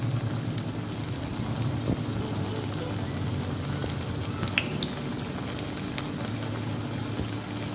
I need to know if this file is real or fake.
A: real